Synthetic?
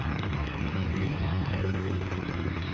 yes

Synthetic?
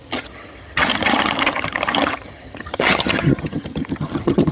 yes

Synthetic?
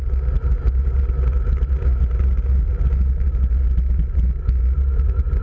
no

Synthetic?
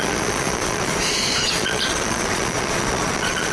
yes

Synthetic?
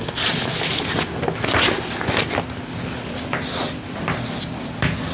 no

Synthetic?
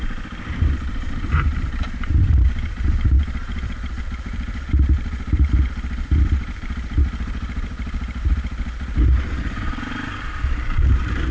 yes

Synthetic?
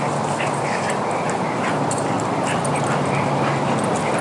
no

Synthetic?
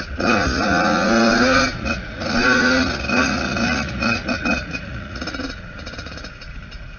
yes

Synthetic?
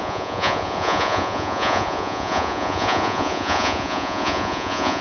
yes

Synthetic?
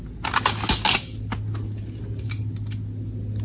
no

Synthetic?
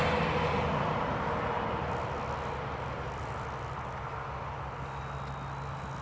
no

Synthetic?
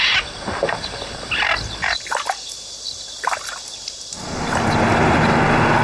no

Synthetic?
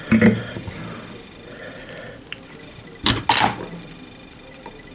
no